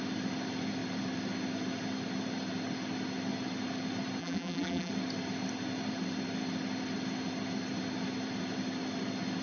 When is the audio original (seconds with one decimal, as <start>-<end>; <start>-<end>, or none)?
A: 0.0-4.2; 4.9-9.4